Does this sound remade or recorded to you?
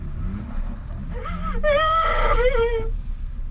remade